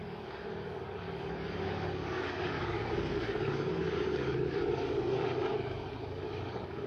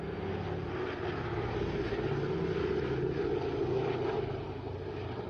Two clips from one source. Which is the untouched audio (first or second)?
second